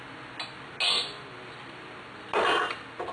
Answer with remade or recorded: recorded